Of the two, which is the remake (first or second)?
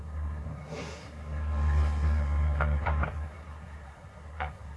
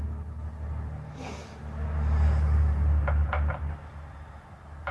first